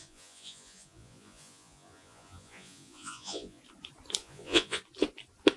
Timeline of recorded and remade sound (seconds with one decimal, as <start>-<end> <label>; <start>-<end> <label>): 0.0-3.6 remade; 3.6-4.2 recorded; 4.2-4.8 remade; 4.8-5.6 recorded